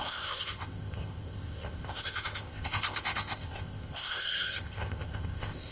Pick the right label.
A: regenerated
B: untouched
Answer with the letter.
A